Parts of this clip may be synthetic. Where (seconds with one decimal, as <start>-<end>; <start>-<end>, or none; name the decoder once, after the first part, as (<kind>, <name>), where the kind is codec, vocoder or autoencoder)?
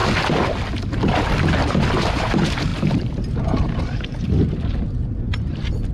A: 2.7-5.9 (vocoder, BigVGAN v2)